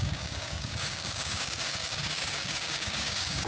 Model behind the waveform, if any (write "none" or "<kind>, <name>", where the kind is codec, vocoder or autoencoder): codec, DAC